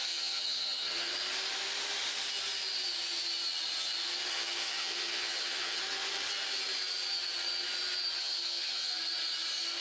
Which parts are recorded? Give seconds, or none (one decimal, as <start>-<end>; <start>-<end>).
1.1-4.3; 5.8-8.2; 8.9-9.8